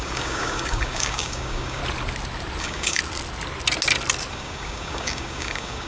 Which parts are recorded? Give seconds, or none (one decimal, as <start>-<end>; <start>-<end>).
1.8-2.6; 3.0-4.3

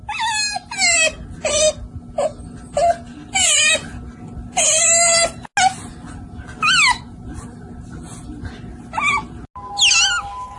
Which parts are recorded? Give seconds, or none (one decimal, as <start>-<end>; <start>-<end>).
0.0-10.6

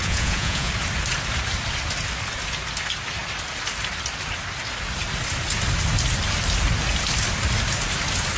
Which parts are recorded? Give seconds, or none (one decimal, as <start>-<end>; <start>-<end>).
0.7-8.4